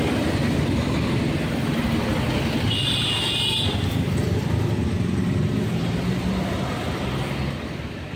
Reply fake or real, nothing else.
fake